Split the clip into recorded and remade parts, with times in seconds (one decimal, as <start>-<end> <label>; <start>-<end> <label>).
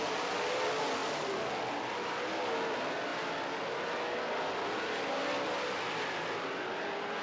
0.0-7.2 recorded